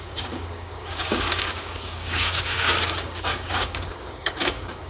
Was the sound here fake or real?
fake